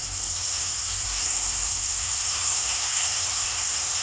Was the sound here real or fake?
fake